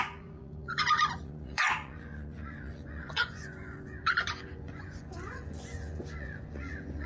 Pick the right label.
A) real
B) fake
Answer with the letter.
B